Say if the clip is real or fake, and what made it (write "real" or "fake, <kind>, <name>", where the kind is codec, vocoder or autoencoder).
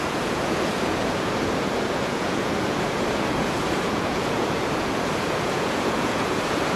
fake, vocoder, Vocos